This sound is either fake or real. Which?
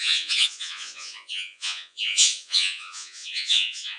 fake